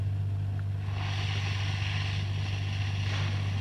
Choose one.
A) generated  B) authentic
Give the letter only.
B